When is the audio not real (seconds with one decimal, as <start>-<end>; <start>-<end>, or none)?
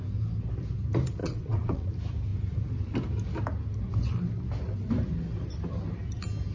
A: 1.2-1.9